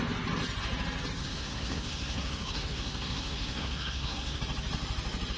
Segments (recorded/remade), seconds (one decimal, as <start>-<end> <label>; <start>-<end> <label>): 0.0-1.2 recorded; 1.2-4.4 remade; 4.4-5.4 recorded